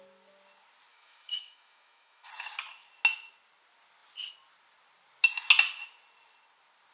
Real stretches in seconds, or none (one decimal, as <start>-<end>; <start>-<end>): 0.0-0.9; 2.3-6.9